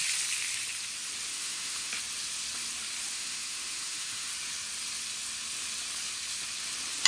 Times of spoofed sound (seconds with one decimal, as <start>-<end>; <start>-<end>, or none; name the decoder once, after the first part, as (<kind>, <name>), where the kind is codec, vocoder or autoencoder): 1.3-1.9 (autoencoder, DAC-VAE); 3.1-4.3